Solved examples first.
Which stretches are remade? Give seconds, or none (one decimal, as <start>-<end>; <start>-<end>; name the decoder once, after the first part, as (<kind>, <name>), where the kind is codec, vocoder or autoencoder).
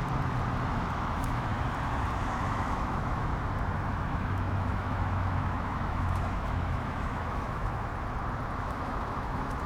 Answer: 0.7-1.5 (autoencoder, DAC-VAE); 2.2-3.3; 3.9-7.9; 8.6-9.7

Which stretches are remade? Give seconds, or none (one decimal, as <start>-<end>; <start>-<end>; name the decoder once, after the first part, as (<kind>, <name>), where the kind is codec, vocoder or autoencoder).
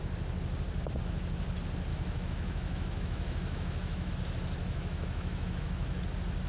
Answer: 1.9-4.1 (autoencoder, DAC-VAE); 4.6-6.0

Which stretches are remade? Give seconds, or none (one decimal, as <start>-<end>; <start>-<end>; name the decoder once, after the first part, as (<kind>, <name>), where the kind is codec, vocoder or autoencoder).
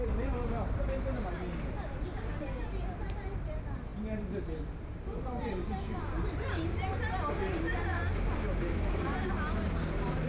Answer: none